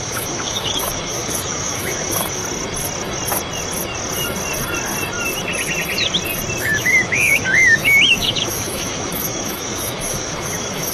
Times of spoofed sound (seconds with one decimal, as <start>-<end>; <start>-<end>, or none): 0.0-2.4; 6.6-10.9